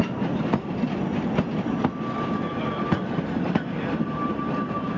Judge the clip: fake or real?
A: fake